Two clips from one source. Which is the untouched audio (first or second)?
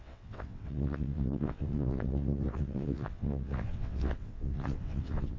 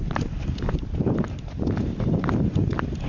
second